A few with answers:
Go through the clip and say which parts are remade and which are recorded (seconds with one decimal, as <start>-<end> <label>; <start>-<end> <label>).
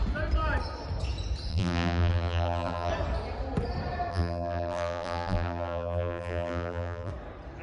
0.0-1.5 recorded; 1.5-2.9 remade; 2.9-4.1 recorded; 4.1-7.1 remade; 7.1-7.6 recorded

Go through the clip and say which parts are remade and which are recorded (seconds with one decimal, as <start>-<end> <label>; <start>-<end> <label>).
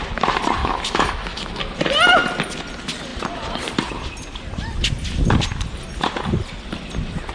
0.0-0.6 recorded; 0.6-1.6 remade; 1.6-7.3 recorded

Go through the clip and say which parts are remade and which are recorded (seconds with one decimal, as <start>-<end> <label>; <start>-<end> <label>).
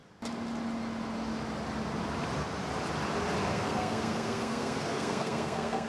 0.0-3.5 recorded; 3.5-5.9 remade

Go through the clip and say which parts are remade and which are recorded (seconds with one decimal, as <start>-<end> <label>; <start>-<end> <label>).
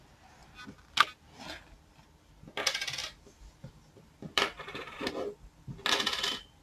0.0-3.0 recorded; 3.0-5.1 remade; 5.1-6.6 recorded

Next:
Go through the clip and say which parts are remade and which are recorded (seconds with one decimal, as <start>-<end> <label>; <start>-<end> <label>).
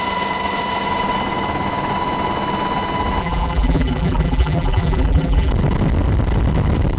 0.0-3.2 recorded; 3.2-5.5 remade; 5.5-7.0 recorded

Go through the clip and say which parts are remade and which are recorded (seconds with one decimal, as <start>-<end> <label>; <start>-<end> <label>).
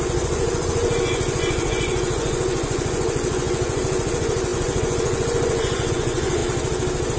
0.0-6.4 remade; 6.4-7.2 recorded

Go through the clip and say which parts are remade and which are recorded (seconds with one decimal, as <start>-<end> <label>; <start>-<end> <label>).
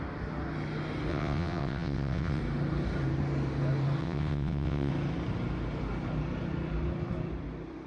0.0-1.1 recorded; 1.1-2.4 remade; 2.4-4.0 recorded; 4.0-4.9 remade; 4.9-7.9 recorded